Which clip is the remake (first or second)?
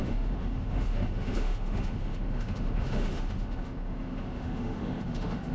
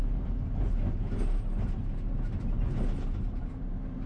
first